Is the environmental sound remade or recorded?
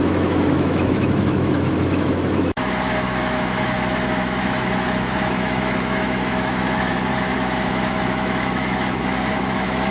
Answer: remade